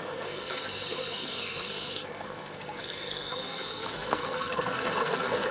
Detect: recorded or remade remade